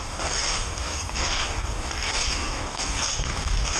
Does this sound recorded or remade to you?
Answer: remade